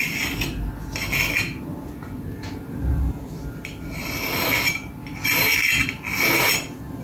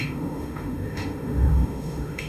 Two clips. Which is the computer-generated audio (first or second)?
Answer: second